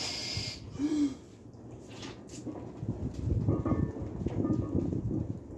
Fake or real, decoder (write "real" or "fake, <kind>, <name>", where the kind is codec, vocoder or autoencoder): real